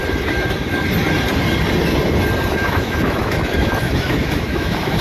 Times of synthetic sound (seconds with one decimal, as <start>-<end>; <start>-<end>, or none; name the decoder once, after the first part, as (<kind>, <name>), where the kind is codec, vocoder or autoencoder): 2.5-5.0 (autoencoder, DAC-VAE)